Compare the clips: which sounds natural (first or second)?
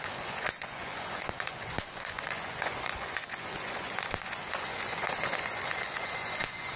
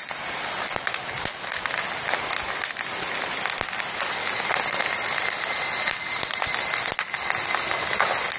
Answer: second